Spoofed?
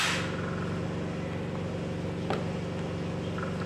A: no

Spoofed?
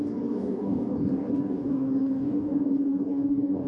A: yes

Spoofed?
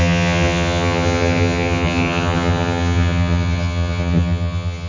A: yes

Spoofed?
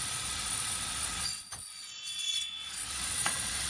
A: yes